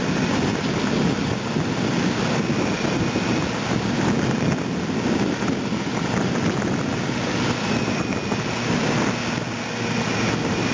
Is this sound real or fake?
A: real